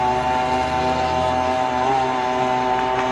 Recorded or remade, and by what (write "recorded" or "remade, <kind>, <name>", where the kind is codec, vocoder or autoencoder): recorded